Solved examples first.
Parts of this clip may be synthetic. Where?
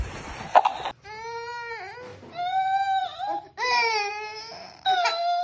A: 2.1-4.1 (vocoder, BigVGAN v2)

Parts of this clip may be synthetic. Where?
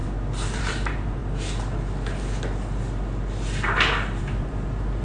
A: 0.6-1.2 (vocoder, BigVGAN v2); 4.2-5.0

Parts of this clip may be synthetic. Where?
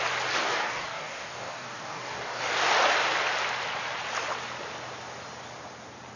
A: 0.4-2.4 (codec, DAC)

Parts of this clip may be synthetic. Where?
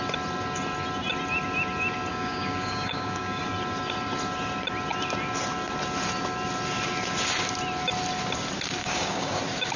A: 2.1-3.4 (codec, DAC); 8.8-9.4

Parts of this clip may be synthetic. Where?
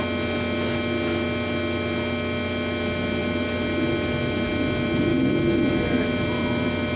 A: none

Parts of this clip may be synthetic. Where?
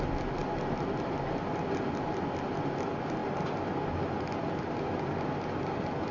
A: none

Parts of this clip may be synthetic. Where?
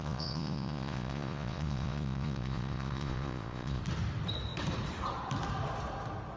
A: 0.0-3.8 (vocoder, Vocos)